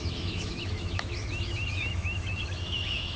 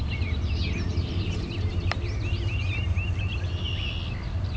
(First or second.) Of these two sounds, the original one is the second